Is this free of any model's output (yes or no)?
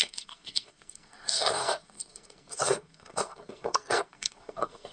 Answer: no